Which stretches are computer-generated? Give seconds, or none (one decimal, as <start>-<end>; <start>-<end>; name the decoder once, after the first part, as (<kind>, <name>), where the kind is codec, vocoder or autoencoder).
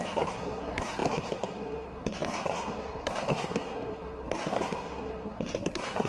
0.0-6.1 (codec, SNAC)